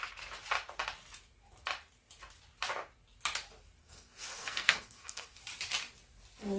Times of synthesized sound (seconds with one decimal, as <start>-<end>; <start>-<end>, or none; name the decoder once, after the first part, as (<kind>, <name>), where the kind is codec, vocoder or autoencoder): 3.8-5.4 (codec, SNAC)